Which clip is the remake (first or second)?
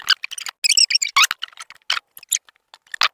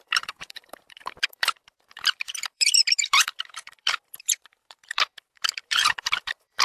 second